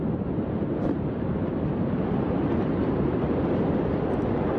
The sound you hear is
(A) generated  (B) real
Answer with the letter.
A